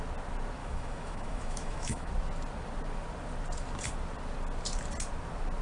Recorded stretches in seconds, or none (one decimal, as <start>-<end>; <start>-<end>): 0.0-0.6; 2.1-5.6